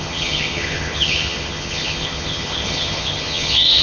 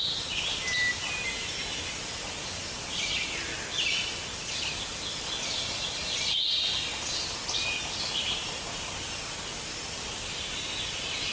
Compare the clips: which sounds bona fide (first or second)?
second